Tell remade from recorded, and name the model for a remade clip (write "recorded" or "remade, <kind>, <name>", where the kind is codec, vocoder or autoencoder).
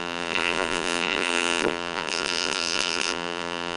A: remade, vocoder, BigVGAN v2